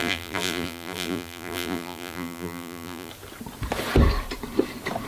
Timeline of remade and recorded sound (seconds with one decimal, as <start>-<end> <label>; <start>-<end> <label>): 0.0-3.1 remade; 3.1-5.1 recorded